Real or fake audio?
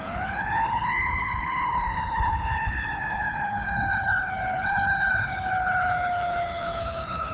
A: fake